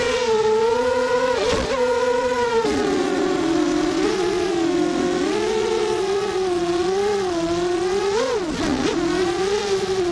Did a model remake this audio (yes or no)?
yes